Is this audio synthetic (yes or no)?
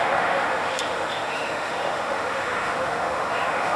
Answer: yes